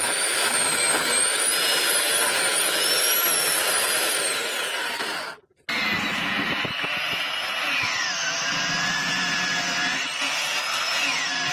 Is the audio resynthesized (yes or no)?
no